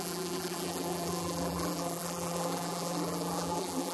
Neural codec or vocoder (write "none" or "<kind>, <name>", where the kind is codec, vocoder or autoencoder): vocoder, BigVGAN v2